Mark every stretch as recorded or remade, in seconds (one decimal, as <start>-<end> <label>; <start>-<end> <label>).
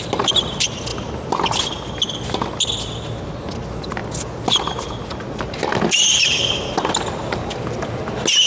0.0-8.5 recorded